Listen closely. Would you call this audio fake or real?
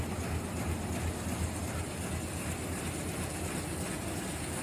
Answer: real